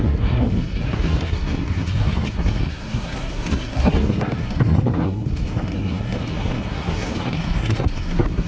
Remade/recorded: remade